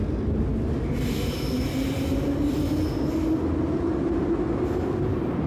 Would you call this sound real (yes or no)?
yes